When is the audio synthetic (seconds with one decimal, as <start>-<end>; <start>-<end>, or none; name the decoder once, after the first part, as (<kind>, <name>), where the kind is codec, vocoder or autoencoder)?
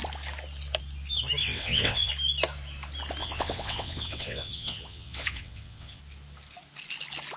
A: 1.4-2.1 (vocoder, WaveNeXt); 3.2-6.0